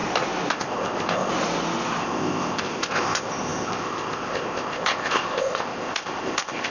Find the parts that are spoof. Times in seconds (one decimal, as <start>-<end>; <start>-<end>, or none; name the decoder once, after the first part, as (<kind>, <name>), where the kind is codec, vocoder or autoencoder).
0.5-1.3 (codec, ZipCodec); 2.0-6.7